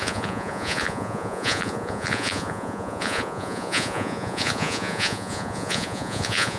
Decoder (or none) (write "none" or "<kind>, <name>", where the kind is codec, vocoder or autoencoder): vocoder, Vocos